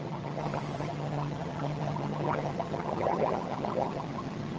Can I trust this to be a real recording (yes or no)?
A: no